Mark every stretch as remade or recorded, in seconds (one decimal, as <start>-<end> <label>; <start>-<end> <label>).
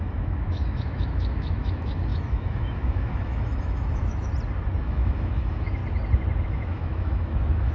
0.0-4.3 remade; 4.3-4.8 recorded; 4.8-5.8 remade; 5.8-6.4 recorded; 6.4-7.7 remade